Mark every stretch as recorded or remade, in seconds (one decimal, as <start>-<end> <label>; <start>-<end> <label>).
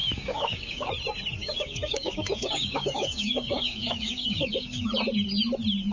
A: 0.0-0.9 remade; 0.9-1.4 recorded; 1.4-4.9 remade; 4.9-5.9 recorded